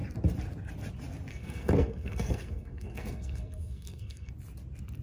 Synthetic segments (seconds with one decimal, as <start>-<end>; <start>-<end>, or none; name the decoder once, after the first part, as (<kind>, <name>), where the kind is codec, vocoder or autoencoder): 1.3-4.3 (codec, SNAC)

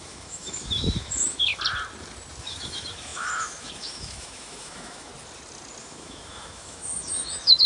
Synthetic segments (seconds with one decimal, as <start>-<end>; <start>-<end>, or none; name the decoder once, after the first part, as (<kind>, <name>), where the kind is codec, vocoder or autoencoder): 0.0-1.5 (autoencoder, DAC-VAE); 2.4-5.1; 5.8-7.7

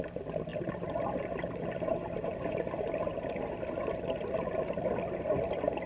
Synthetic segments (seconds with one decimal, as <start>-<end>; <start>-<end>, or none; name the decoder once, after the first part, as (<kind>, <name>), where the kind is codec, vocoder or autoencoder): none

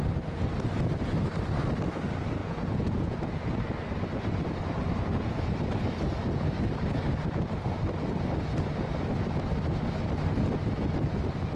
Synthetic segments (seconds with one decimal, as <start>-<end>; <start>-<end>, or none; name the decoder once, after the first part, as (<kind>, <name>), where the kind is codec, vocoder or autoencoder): 2.4-3.4 (vocoder, Vocos)

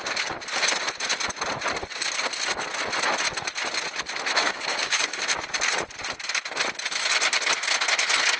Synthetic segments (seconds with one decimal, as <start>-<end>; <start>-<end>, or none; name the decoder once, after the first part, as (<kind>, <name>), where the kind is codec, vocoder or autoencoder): 4.4-5.2 (codec, DAC)

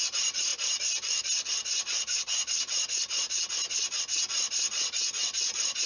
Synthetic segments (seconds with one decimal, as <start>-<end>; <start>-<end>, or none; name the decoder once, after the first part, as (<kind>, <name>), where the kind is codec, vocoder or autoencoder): none